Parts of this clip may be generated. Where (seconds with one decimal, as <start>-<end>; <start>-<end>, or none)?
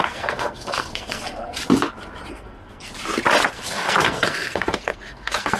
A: 0.0-1.6; 2.3-2.9; 3.5-5.6